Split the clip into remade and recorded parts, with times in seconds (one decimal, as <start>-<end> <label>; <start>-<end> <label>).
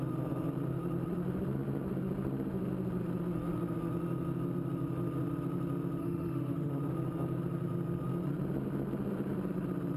0.0-6.0 recorded; 6.0-6.7 remade; 6.7-10.0 recorded